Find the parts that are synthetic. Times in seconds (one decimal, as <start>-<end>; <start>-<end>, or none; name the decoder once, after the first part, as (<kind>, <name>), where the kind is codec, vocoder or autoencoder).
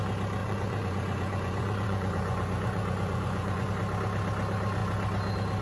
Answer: 0.4-3.7 (vocoder, Vocos)